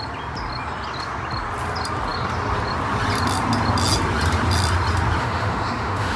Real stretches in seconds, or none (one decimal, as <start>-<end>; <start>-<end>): 0.0-5.2